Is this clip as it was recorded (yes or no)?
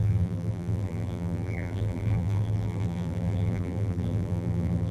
no